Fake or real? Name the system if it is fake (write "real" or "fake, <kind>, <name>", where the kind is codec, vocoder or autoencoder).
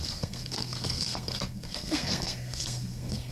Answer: fake, codec, SNAC